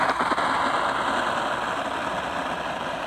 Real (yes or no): yes